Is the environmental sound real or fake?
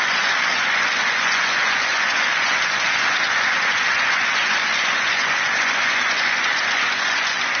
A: fake